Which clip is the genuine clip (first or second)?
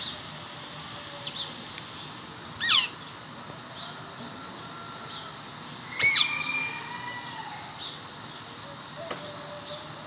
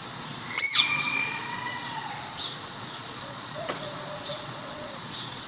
first